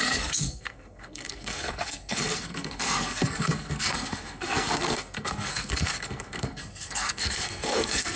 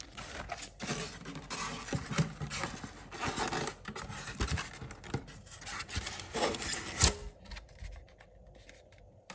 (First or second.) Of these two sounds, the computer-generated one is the first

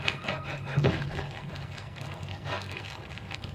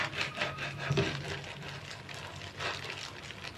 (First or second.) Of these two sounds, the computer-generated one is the first